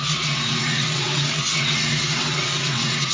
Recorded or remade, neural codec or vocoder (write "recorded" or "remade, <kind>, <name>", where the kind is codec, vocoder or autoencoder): remade, vocoder, WaveNeXt